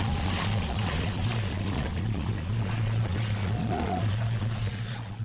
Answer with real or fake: fake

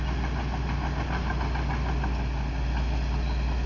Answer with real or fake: real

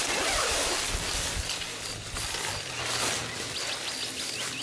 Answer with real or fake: real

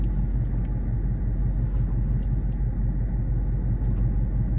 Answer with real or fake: real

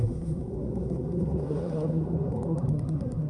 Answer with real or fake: fake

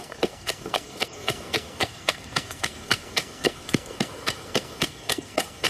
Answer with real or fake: fake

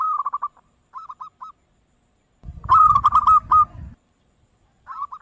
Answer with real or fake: real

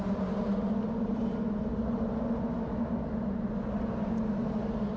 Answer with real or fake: real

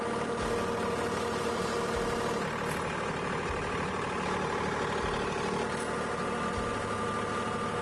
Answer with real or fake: real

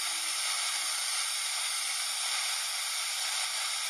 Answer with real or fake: real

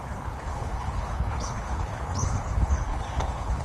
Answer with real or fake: fake